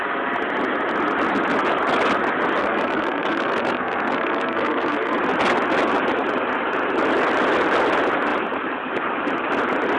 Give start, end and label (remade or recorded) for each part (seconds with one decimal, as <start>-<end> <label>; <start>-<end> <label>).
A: 0.0-2.6 recorded; 2.6-5.2 remade; 5.2-10.0 recorded